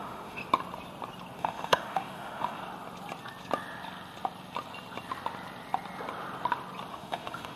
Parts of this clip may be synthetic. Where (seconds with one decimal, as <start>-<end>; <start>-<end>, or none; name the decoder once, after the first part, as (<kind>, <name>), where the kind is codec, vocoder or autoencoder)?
0.0-0.4 (autoencoder, DAC-VAE); 1.4-2.6; 6.9-7.6